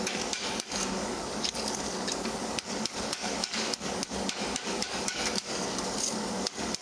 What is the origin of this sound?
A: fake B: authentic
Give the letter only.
A